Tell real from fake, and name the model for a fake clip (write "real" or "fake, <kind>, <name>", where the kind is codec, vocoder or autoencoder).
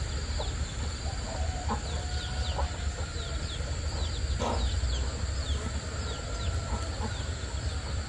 real